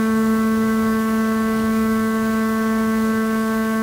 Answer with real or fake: fake